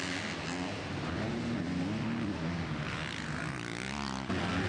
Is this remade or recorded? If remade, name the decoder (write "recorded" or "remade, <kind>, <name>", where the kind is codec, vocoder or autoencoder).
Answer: recorded